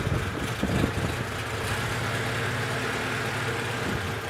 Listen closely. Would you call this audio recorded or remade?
recorded